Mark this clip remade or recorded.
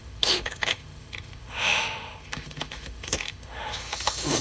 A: remade